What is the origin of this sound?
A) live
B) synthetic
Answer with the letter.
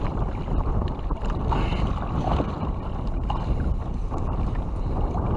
A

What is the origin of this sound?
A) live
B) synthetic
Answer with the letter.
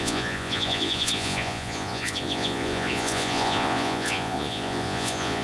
B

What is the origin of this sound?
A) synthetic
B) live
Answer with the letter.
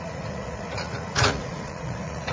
A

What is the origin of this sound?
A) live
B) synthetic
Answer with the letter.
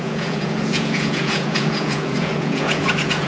B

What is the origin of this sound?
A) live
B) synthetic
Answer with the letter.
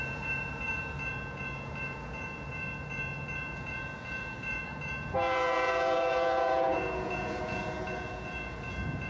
B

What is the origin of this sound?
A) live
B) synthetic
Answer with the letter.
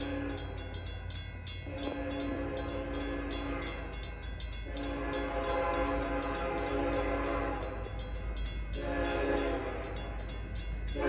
A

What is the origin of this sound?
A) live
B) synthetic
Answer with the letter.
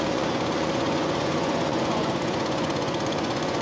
B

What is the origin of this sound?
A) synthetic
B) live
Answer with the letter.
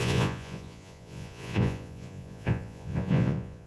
A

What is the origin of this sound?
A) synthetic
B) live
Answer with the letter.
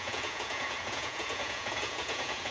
A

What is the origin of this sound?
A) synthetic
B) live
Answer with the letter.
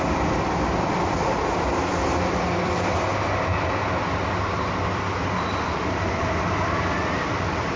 B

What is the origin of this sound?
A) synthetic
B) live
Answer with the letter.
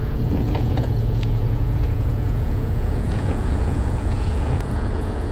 A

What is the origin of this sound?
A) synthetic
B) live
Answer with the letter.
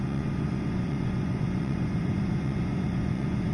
A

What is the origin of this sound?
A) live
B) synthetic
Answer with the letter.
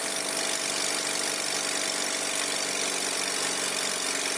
A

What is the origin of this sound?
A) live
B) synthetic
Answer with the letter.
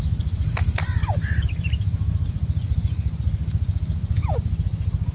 A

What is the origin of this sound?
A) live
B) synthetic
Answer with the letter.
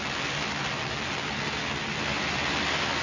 A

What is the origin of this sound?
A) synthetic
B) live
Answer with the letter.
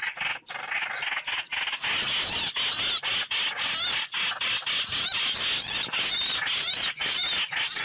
B